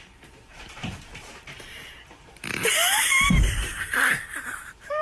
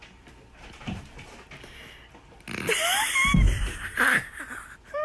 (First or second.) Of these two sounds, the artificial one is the first